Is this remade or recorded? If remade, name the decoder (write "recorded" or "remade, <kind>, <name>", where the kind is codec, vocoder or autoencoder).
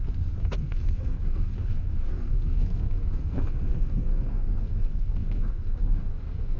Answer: remade, codec, SNAC